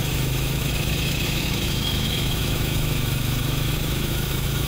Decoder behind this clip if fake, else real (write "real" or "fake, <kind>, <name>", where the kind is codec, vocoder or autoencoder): fake, autoencoder, DAC-VAE